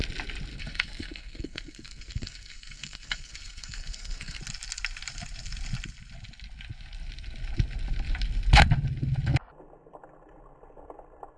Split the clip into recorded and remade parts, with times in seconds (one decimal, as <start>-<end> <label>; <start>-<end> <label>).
0.0-0.5 recorded; 0.5-4.4 remade; 4.4-11.4 recorded

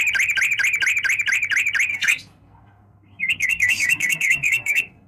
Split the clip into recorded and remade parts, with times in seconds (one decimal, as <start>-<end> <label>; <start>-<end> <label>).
0.0-1.9 recorded; 1.9-5.1 remade

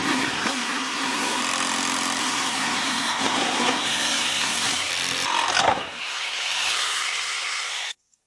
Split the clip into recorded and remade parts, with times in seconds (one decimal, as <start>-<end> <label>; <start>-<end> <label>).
0.0-1.4 remade; 1.4-2.2 recorded; 2.2-4.9 remade; 4.9-5.6 recorded; 5.6-8.3 remade